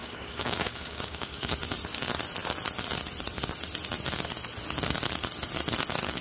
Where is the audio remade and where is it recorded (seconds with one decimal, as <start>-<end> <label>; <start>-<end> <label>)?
0.0-1.5 remade; 1.5-6.2 recorded